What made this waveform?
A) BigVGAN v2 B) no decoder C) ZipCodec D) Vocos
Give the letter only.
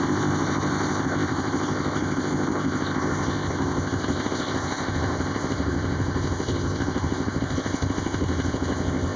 C